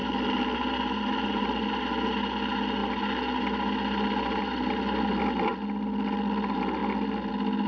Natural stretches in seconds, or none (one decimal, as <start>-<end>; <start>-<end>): 1.7-7.7